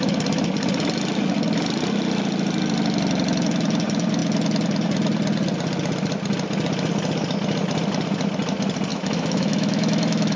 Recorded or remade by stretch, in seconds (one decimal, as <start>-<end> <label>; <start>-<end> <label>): 0.0-8.9 recorded; 8.9-10.4 remade